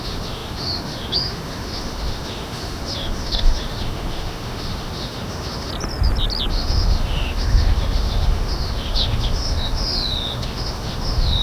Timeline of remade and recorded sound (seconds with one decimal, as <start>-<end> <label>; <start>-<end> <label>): 0.0-5.7 remade; 5.7-6.5 recorded; 6.5-11.4 remade